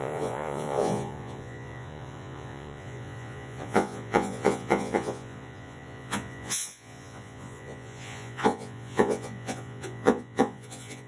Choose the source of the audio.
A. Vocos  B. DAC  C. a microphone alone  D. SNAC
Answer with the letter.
A